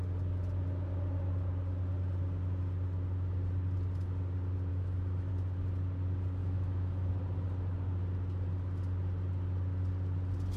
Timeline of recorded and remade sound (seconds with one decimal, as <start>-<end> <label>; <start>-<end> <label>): 0.0-4.7 recorded; 4.7-5.3 remade; 5.3-6.4 recorded; 6.4-7.1 remade; 7.1-10.6 recorded